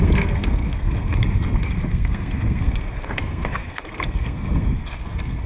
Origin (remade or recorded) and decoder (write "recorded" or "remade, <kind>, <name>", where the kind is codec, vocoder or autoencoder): remade, codec, SNAC